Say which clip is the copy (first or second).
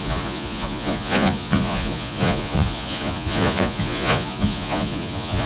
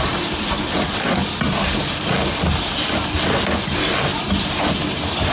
first